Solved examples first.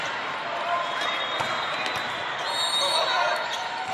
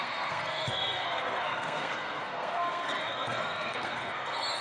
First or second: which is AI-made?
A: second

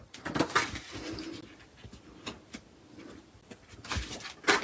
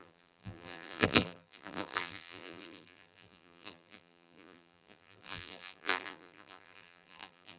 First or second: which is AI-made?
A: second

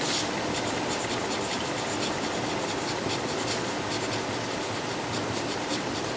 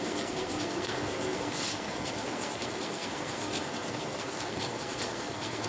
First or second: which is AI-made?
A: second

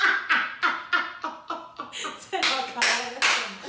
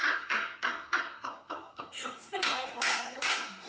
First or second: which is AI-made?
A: second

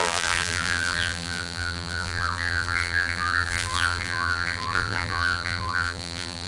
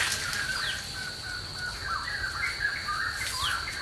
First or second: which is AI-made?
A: first